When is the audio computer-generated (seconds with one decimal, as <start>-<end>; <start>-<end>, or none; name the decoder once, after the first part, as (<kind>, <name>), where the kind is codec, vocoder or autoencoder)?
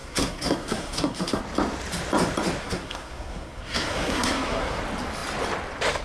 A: 0.0-1.4 (codec, SNAC); 2.6-4.8